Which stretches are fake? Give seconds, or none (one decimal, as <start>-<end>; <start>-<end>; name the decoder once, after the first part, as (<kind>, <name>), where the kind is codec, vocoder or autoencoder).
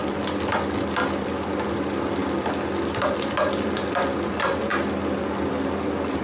none